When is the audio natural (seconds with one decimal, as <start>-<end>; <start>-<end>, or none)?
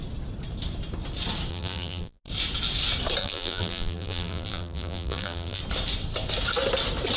0.0-1.5; 2.2-3.2; 5.6-7.2